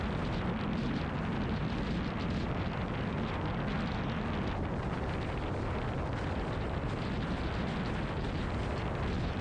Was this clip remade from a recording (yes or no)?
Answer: no